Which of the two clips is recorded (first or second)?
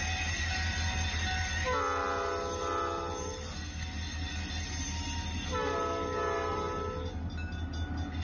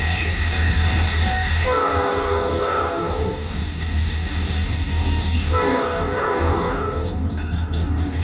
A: first